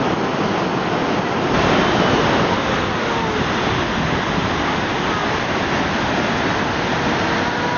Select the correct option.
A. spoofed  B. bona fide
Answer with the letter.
B